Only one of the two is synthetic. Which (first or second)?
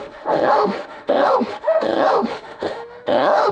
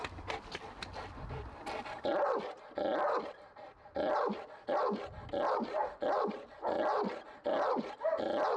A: first